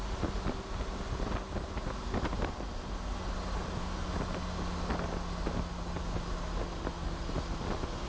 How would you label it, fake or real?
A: real